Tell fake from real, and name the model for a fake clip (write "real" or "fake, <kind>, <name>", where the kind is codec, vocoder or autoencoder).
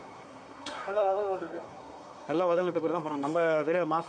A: fake, codec, SNAC